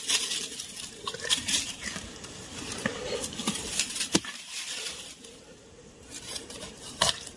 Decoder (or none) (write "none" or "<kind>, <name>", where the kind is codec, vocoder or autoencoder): vocoder, BigVGAN v2